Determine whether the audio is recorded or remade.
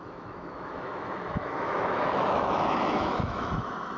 remade